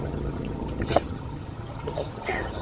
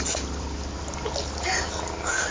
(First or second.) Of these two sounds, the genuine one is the second